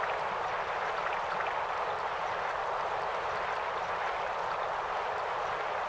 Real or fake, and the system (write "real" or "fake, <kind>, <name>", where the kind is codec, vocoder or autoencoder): real